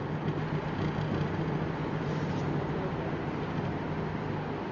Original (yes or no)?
yes